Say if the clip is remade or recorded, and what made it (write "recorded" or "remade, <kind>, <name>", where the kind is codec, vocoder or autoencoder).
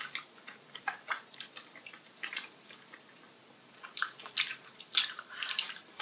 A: recorded